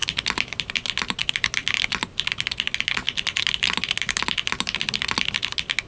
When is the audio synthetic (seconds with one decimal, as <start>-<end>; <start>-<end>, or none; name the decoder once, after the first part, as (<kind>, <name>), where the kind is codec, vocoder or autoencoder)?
none